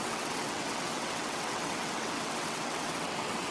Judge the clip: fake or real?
fake